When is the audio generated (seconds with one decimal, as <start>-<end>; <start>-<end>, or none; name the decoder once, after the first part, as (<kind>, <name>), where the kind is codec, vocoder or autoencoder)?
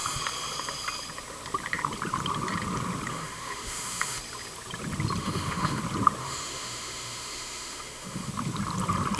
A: 3.1-4.2 (autoencoder, DAC-VAE); 5.2-5.8; 6.2-8.3